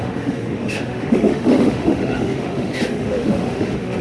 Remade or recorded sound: remade